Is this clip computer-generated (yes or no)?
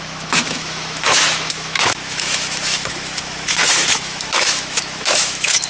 yes